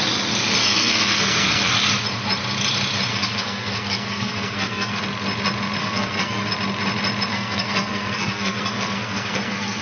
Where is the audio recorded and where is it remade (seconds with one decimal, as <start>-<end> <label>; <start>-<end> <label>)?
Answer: 0.0-0.6 recorded; 0.6-1.7 remade; 1.7-3.1 recorded; 3.1-5.0 remade; 5.0-5.8 recorded; 5.8-6.5 remade; 6.5-7.3 recorded; 7.3-9.8 remade